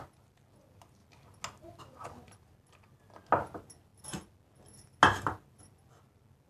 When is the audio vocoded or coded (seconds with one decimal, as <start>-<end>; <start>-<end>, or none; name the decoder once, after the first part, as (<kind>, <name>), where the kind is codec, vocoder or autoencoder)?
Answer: none